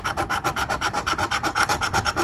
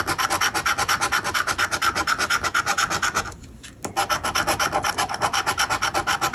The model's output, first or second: first